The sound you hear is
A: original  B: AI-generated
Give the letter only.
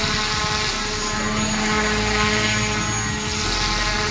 A